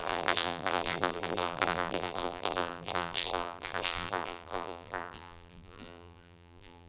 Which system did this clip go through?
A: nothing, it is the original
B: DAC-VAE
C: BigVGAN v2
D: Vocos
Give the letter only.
C